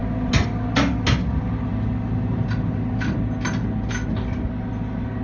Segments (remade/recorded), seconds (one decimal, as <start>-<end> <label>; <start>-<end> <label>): 0.0-5.2 recorded